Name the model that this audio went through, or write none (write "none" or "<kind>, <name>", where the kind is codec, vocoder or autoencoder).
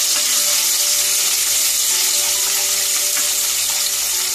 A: none